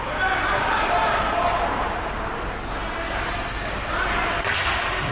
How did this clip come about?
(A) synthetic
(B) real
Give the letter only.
B